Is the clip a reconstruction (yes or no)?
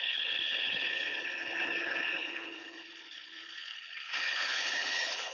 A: yes